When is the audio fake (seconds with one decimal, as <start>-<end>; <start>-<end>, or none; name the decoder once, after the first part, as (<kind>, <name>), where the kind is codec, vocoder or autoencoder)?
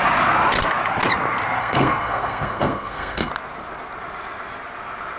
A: 1.6-3.3 (codec, SNAC)